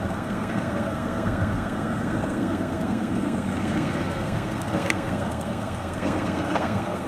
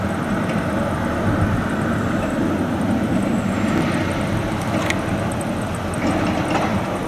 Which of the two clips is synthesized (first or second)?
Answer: first